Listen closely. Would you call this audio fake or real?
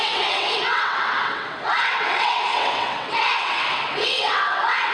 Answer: fake